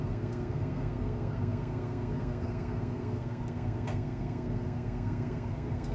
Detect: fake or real fake